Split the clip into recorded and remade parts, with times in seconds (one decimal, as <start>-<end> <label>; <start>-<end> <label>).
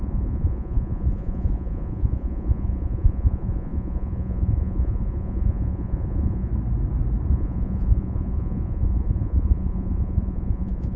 0.0-6.5 remade; 6.5-7.3 recorded; 7.3-11.0 remade